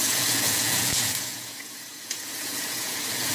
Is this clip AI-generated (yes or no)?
yes